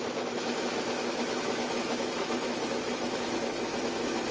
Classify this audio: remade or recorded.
remade